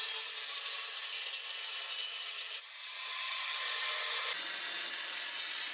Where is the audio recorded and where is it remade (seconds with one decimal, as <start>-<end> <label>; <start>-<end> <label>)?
0.0-2.0 recorded; 2.0-3.7 remade; 3.7-5.7 recorded